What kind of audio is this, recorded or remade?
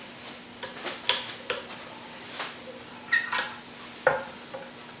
recorded